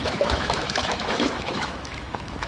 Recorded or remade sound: remade